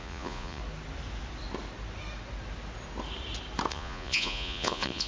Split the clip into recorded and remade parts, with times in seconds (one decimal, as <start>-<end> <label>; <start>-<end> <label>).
0.0-0.6 remade; 0.6-3.7 recorded; 3.7-5.1 remade